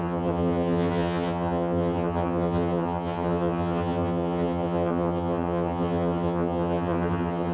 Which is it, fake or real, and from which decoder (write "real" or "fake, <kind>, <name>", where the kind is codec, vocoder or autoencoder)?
fake, vocoder, HiFi-GAN